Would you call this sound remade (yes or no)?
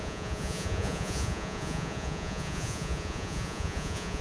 yes